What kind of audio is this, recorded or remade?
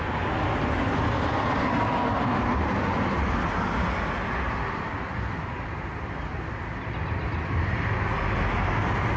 recorded